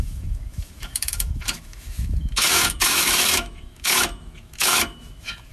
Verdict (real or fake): fake